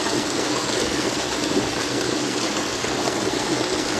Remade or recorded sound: remade